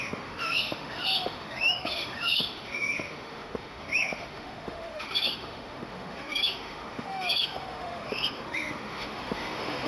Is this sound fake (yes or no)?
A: yes